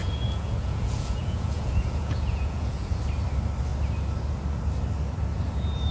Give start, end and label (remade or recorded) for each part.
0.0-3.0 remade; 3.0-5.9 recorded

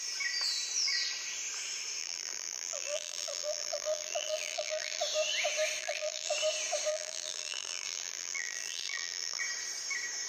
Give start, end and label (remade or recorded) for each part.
0.0-2.0 recorded; 2.0-5.0 remade; 5.0-5.8 recorded; 5.8-6.3 remade; 6.3-6.9 recorded; 6.9-9.4 remade; 9.4-10.3 recorded

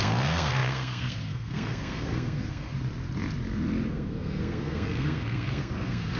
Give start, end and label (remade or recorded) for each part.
0.0-2.7 remade; 2.7-3.9 recorded; 3.9-6.2 remade

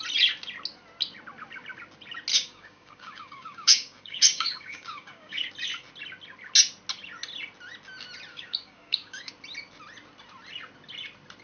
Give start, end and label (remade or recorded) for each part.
0.0-2.3 recorded; 2.3-5.5 remade; 5.5-8.3 recorded; 8.3-9.3 remade; 9.3-11.4 recorded

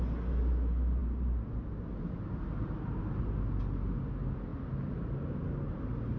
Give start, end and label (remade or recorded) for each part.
0.0-6.2 recorded

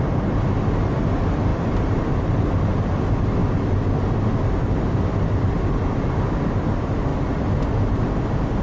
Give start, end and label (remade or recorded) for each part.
0.0-8.6 recorded

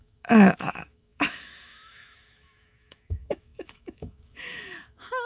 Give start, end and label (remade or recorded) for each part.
0.0-5.3 remade

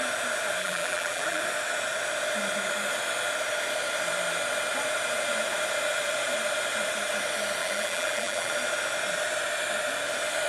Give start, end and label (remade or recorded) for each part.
0.0-0.6 recorded; 0.6-1.4 remade; 1.4-7.6 recorded; 7.6-8.5 remade; 8.5-10.5 recorded